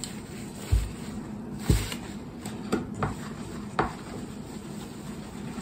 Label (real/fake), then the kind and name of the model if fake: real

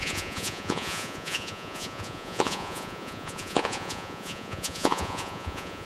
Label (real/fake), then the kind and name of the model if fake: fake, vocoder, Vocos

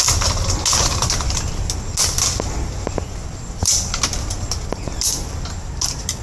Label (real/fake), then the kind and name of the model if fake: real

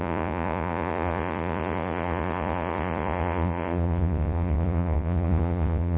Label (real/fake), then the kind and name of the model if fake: fake, vocoder, Vocos